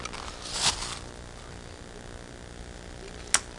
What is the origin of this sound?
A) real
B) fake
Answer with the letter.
A